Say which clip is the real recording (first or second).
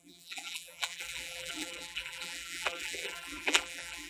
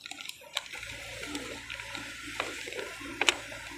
second